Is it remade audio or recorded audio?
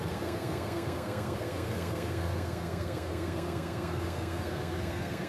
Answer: remade